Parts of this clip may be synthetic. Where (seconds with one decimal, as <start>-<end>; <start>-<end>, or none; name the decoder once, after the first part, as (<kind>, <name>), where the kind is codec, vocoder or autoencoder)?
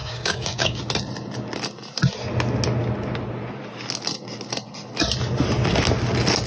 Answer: 0.0-0.8 (codec, DAC)